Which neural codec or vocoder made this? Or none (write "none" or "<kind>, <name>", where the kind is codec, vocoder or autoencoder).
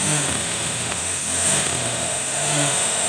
autoencoder, DAC-VAE